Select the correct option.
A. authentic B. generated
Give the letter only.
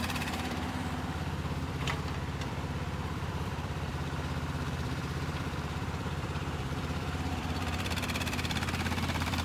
B